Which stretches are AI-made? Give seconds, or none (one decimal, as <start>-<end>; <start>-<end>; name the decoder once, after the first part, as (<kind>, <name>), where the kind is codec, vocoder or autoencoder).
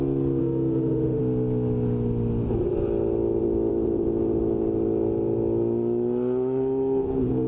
0.4-1.2 (autoencoder, DAC-VAE)